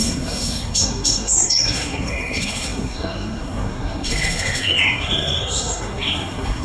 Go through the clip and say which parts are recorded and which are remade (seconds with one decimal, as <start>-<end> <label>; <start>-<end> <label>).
0.0-6.6 remade